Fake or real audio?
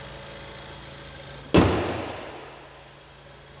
real